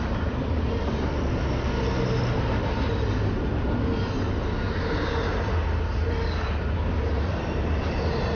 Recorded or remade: recorded